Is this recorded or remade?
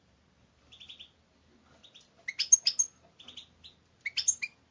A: recorded